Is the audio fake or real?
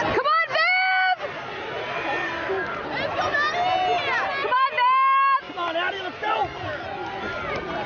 real